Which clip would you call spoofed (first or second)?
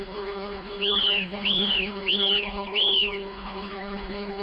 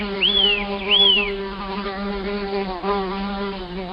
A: first